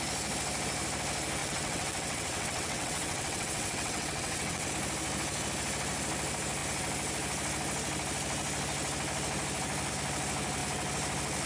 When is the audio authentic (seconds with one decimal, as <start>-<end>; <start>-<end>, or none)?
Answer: 0.0-1.4; 4.7-11.5

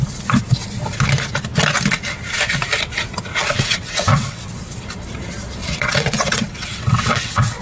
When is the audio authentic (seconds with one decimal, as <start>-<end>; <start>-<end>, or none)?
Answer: 0.0-3.4; 4.5-5.6

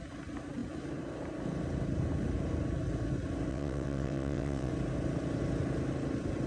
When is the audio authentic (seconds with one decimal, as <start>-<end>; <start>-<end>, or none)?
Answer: 0.0-3.5; 4.7-6.5